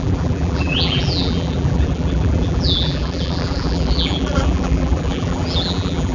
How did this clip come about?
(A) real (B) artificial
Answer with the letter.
B